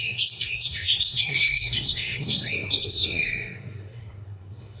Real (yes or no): no